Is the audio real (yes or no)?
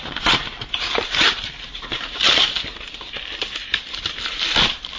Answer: no